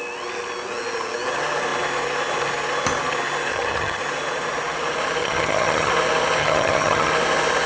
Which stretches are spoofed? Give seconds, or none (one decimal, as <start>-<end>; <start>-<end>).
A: 3.5-4.0; 5.2-5.9; 6.4-7.1